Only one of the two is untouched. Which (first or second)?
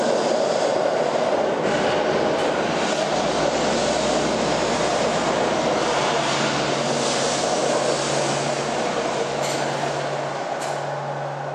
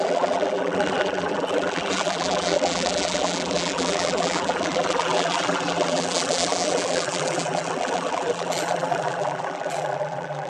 first